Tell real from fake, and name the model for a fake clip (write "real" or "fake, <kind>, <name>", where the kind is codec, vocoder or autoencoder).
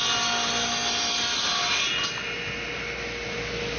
real